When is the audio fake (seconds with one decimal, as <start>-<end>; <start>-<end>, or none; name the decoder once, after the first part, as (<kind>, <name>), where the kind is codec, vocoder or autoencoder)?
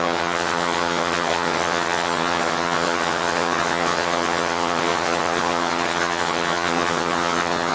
0.0-7.7 (vocoder, HiFi-GAN)